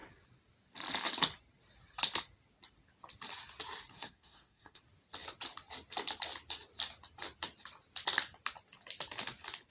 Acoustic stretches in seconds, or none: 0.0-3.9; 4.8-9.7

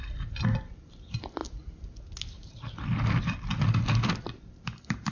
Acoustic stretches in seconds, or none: 1.4-4.5

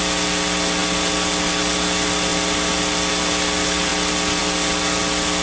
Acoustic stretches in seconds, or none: 0.0-5.4

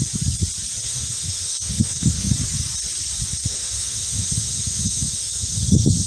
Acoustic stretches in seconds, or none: 0.0-0.8; 2.3-3.4

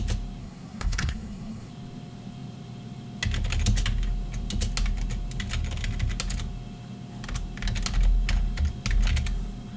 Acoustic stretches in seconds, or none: 0.0-0.4; 1.7-9.8

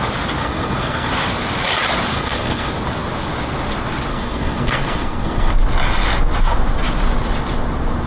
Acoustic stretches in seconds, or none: 0.0-0.4; 1.1-2.1; 2.7-4.1; 5.5-8.1